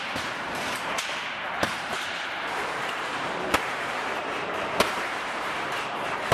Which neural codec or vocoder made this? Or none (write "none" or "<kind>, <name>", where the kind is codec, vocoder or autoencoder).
vocoder, BigVGAN v2